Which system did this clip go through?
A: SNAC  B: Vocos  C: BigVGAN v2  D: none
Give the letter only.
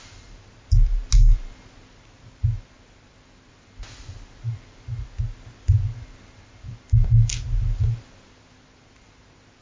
D